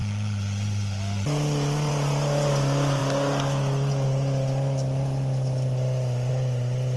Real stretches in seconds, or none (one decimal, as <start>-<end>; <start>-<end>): 0.0-7.0